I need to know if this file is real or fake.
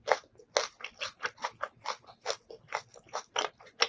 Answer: real